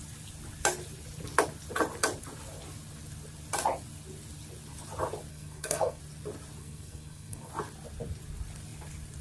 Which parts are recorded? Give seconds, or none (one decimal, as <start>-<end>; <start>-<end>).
0.0-5.3; 6.0-6.6; 7.5-9.2